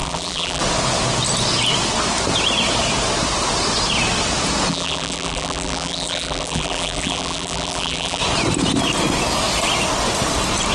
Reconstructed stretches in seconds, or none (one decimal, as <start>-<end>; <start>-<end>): 0.0-0.6; 4.7-8.2